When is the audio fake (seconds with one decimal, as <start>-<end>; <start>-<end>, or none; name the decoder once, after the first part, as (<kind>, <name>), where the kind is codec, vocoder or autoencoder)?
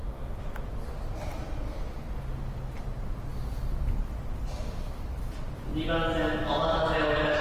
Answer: none